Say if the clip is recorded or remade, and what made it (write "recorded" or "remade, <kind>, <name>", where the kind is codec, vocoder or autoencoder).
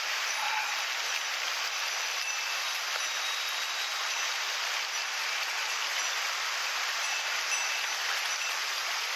recorded